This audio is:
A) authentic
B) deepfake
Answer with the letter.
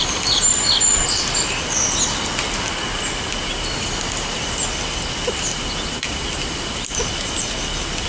A